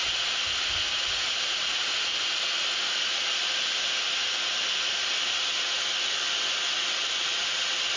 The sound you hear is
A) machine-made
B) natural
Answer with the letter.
B